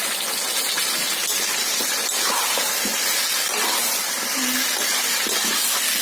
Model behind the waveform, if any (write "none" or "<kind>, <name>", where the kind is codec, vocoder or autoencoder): none